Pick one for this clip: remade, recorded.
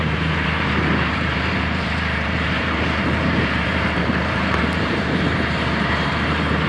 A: remade